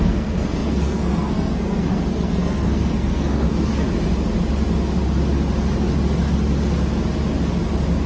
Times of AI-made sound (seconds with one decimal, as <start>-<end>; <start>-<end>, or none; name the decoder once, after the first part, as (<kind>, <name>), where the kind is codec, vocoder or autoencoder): 0.0-3.7 (codec, SNAC)